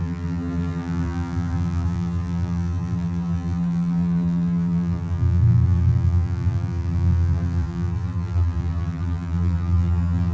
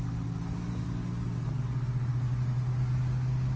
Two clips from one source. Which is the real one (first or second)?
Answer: second